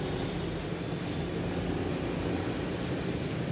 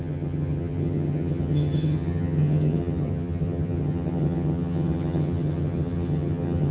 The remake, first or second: second